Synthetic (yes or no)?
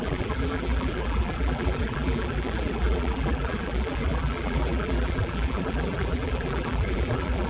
yes